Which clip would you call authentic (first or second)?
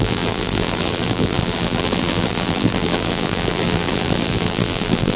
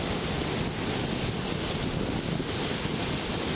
second